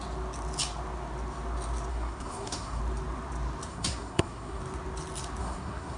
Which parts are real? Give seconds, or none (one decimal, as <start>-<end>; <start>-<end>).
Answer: 0.0-1.9; 2.8-3.7; 4.6-5.4

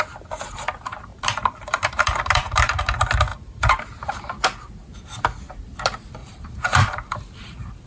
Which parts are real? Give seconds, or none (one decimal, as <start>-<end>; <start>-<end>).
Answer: 0.0-1.1; 2.8-3.3; 3.8-6.2

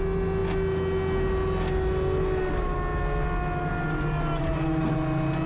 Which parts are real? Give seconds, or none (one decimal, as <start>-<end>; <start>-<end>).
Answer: 0.0-5.5

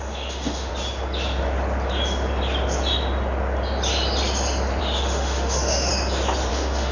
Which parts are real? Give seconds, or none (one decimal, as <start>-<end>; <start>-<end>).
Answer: 0.7-4.8; 5.9-6.5

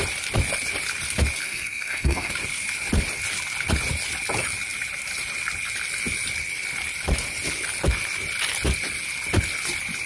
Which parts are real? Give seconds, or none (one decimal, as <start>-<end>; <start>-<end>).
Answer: 0.0-1.4; 2.3-10.1

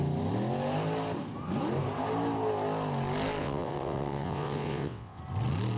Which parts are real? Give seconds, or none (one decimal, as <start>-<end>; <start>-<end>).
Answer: 0.0-3.4; 5.2-5.8